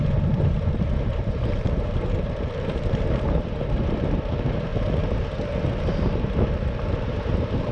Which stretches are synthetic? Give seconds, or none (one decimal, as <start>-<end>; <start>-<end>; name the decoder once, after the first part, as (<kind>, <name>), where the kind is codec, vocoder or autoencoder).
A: 0.0-4.7 (vocoder, BigVGAN v2); 6.0-7.7